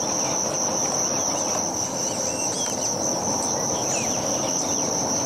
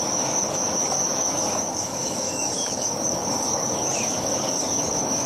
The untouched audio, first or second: first